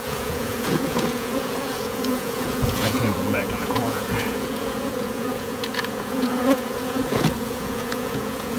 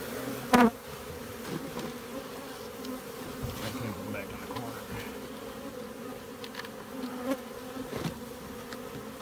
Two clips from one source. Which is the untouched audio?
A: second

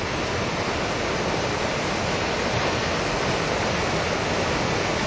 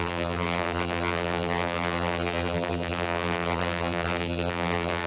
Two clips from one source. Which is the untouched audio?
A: first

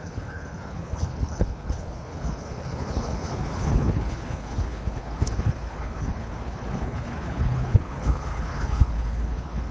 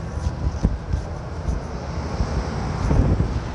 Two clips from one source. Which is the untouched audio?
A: second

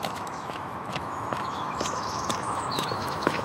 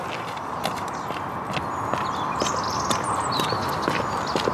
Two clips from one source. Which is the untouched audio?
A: second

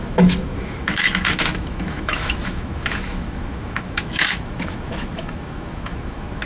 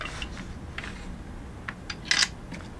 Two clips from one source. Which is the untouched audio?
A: second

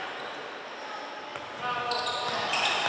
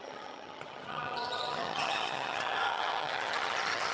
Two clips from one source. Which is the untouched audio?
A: first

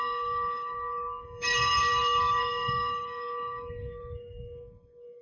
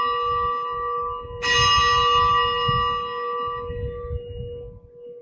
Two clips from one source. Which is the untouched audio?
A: second